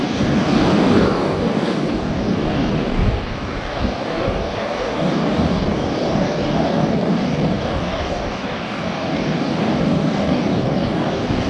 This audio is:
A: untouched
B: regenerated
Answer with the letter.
B